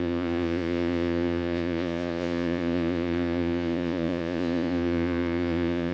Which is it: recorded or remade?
remade